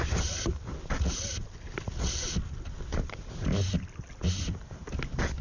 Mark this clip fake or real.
real